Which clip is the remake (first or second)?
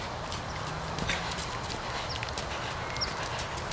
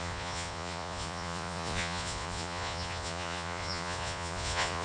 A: second